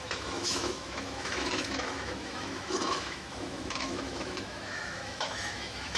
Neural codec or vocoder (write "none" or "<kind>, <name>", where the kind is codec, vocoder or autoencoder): autoencoder, DAC-VAE